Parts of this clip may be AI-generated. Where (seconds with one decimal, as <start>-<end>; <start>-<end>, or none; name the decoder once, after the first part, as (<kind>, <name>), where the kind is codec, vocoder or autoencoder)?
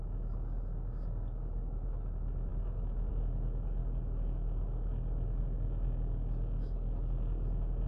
none